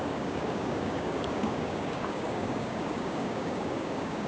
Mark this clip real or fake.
fake